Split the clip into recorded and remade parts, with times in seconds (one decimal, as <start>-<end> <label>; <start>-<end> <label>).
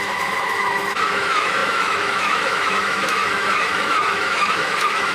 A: 0.0-5.1 remade